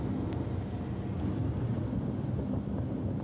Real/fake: real